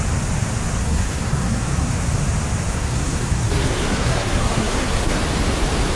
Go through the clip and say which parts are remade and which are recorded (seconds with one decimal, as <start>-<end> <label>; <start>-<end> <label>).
0.0-0.8 recorded; 0.8-1.9 remade; 1.9-2.7 recorded; 2.7-5.2 remade; 5.2-6.0 recorded